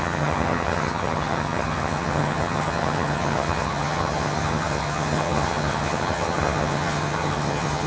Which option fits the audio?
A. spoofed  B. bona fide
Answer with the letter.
A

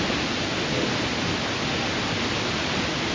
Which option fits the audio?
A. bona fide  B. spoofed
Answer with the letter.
A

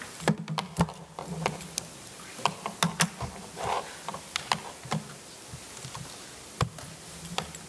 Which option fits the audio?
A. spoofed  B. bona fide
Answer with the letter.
B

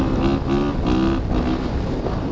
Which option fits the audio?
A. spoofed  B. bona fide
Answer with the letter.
B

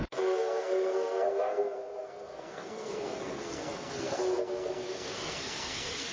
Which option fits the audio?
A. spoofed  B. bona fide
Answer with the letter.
A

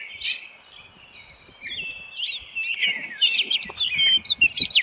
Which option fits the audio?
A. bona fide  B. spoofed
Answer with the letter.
A